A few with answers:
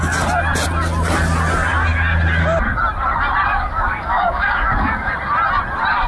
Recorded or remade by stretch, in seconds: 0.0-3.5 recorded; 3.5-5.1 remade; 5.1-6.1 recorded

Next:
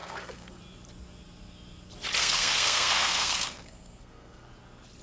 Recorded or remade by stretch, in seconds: 0.0-0.6 remade; 0.6-2.2 recorded; 2.2-4.5 remade; 4.5-5.0 recorded

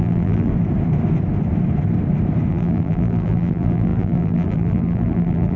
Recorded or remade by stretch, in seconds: 0.0-0.5 remade; 0.5-2.5 recorded; 2.5-5.6 remade

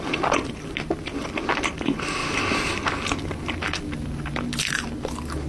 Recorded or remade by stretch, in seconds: 0.0-5.5 recorded

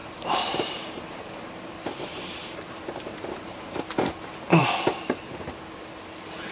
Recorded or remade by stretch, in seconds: 0.0-1.0 remade; 1.0-1.8 recorded; 1.8-3.8 remade; 3.8-6.5 recorded

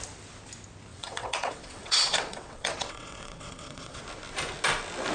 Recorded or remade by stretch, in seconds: 0.0-0.9 recorded; 0.9-4.0 remade; 4.0-5.1 recorded

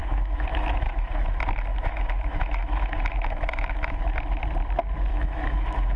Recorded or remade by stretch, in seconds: 0.0-1.1 remade; 1.1-1.7 recorded; 1.7-4.0 remade; 4.0-5.1 recorded; 5.1-6.0 remade